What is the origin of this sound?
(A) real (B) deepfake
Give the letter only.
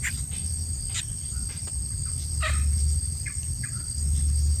A